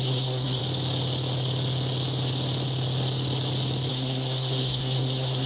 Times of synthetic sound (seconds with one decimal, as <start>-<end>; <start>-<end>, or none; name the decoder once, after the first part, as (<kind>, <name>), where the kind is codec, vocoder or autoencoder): 0.0-0.6 (codec, SNAC); 3.9-5.5